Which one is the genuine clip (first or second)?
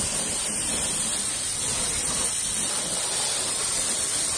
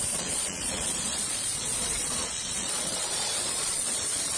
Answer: first